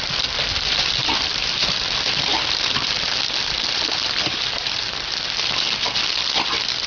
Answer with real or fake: real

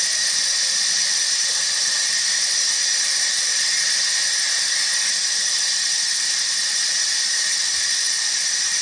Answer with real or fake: real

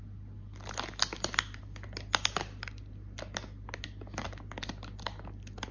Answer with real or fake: real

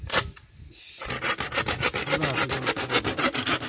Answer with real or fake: real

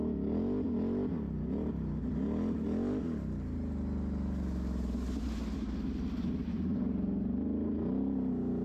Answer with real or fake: real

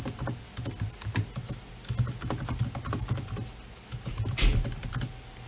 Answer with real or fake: real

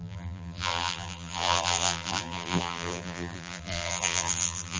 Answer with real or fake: fake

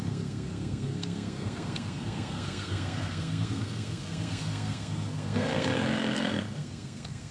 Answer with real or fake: fake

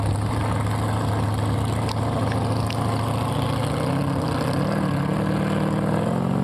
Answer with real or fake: real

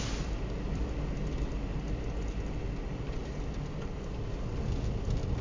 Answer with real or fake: real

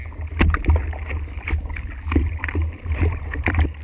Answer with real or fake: real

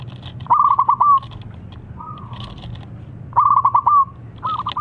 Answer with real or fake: real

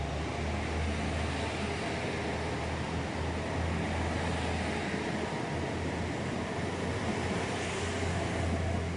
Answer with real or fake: real